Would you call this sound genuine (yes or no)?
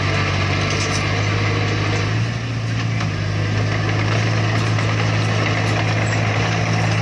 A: yes